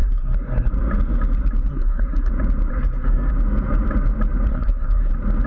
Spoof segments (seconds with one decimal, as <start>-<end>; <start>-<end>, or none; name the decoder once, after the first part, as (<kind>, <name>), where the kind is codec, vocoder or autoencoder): 0.0-0.7 (codec, SNAC); 1.7-2.3; 2.7-3.3; 4.5-5.1